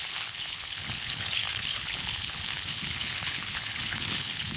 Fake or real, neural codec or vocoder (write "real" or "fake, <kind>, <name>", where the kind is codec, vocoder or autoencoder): fake, codec, HILCodec